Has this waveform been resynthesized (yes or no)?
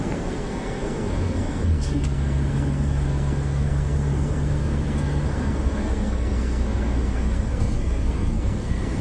yes